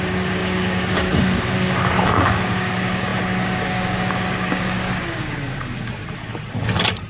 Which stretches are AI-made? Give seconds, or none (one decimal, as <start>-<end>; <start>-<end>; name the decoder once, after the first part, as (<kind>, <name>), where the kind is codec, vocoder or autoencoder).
0.0-6.0 (codec, DAC)